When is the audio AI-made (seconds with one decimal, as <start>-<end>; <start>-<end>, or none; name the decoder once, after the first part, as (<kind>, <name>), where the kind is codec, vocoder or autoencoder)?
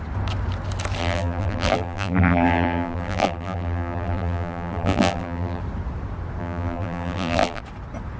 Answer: 1.0-5.6 (vocoder, BigVGAN v2); 6.4-7.6